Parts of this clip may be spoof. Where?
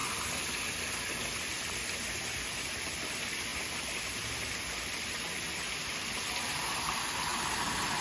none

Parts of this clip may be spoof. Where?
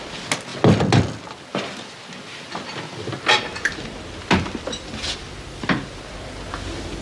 none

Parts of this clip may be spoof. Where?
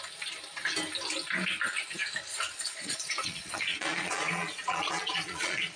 2.3-5.8 (vocoder, Vocos)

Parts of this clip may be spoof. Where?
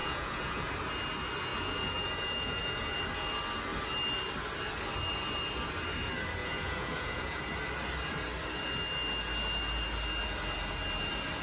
0.0-0.7 (vocoder, Vocos); 1.5-3.0; 6.4-7.4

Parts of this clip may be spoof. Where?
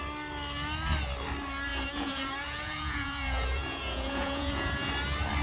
1.7-4.9 (vocoder, Vocos)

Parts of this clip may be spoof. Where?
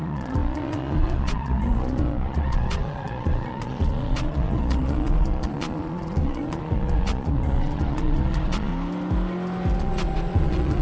0.0-8.7 (vocoder, Vocos); 9.8-10.8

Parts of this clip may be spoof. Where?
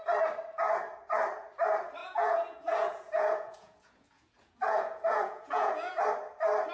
2.0-6.0 (vocoder, Vocos)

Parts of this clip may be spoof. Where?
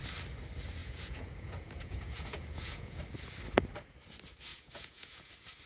0.8-3.0 (vocoder, Vocos); 4.5-5.3